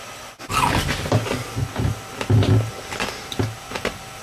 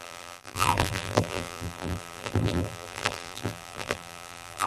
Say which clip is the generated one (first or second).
second